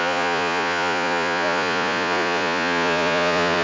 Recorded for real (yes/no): no